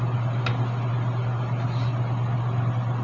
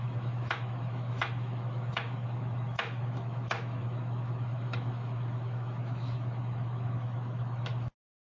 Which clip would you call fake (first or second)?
second